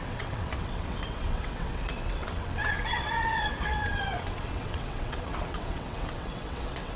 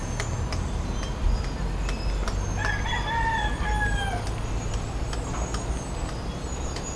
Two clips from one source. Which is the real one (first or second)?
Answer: second